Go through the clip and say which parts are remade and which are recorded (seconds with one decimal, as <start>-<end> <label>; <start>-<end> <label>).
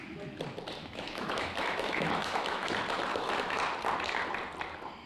0.0-0.8 recorded; 0.8-2.7 remade; 2.7-3.1 recorded; 3.1-3.6 remade; 3.6-5.1 recorded